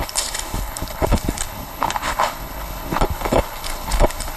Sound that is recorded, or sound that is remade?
remade